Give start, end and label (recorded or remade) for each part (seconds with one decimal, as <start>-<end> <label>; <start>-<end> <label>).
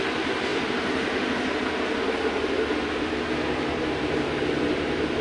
0.0-0.5 recorded; 0.5-1.5 remade; 1.5-5.2 recorded